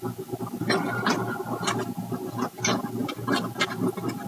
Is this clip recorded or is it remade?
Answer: recorded